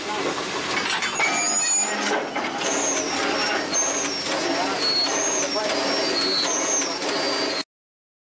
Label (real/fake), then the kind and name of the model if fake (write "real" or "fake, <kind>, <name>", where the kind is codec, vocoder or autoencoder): real